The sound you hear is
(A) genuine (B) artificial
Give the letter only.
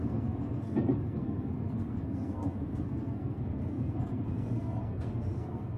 B